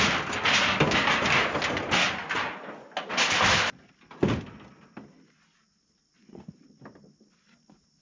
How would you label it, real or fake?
real